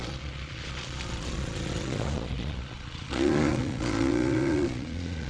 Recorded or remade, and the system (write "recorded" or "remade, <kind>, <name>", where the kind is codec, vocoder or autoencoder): remade, vocoder, Vocos